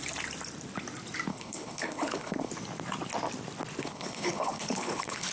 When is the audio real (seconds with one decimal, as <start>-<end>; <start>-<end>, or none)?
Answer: 0.0-1.3; 2.5-3.8